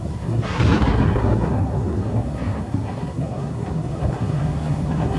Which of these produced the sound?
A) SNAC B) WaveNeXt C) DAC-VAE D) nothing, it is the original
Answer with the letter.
A